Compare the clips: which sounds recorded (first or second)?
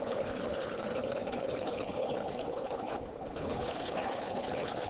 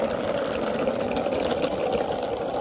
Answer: second